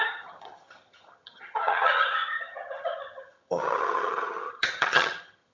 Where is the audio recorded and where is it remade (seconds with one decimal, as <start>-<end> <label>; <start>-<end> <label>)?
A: 0.0-5.5 remade